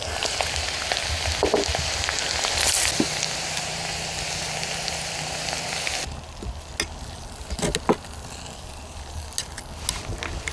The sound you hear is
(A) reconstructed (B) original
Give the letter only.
B